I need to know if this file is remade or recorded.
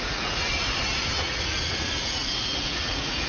remade